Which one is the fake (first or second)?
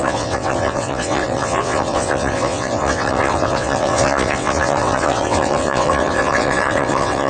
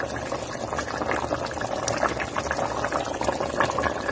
first